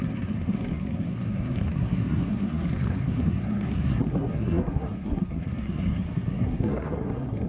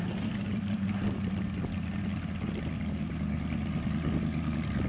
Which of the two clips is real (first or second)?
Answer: second